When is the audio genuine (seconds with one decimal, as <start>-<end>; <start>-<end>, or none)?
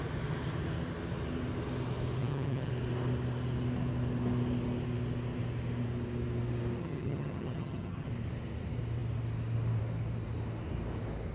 0.0-2.2; 2.7-6.8; 8.1-11.3